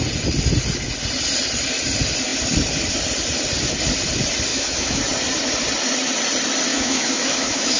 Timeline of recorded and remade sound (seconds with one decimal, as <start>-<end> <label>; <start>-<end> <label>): 0.0-4.5 recorded; 4.5-5.0 remade; 5.0-6.7 recorded; 6.7-7.8 remade